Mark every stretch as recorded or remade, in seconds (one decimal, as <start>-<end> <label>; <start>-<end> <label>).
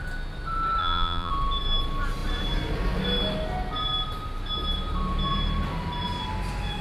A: 0.0-0.8 recorded; 0.8-1.3 remade; 1.3-6.8 recorded